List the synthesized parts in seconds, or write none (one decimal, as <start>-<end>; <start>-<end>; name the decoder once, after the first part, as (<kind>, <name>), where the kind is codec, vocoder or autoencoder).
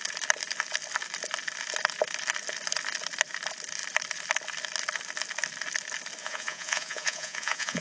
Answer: 6.2-7.8 (vocoder, Vocos)